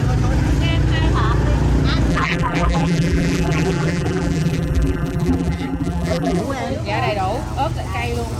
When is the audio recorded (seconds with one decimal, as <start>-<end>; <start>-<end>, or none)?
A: 0.0-2.1; 6.4-8.4